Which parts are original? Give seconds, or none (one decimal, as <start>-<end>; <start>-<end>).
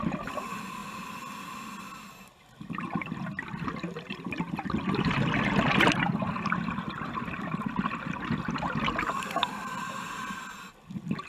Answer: 0.0-7.2; 8.4-9.4; 10.3-11.3